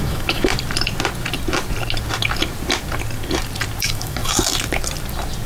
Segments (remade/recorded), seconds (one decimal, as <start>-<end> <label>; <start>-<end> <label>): 0.0-0.5 remade; 0.5-3.8 recorded; 3.8-4.2 remade; 4.2-5.5 recorded